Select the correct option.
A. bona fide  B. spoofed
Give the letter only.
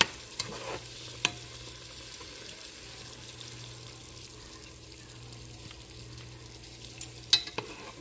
A